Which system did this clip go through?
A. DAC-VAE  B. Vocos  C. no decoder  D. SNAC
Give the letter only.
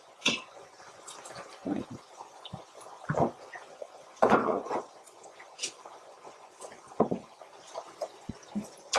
B